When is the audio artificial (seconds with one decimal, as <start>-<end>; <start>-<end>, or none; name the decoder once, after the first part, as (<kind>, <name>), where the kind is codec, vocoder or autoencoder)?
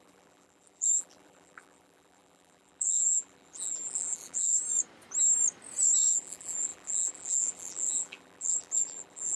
0.0-4.6 (vocoder, BigVGAN v2); 6.1-9.4